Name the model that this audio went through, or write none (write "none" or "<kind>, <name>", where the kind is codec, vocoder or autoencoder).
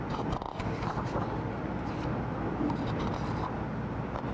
none